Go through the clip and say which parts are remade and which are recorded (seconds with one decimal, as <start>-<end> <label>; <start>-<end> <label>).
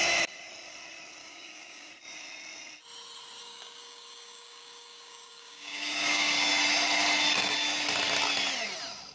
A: 0.0-1.2 recorded; 1.2-1.9 remade; 1.9-3.4 recorded; 3.4-6.5 remade; 6.5-9.1 recorded